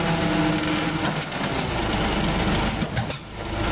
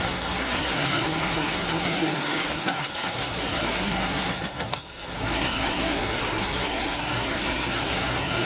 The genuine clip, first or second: first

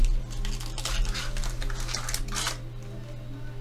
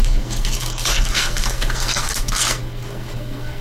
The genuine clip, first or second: first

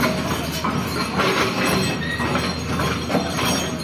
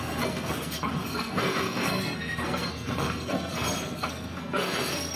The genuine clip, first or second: first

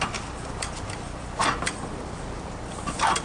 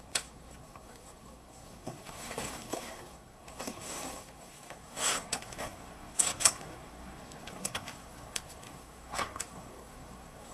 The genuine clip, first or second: first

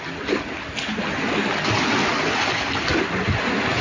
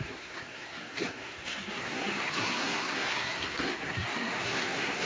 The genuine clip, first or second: first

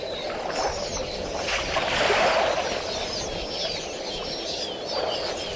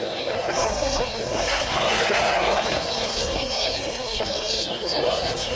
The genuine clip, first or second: first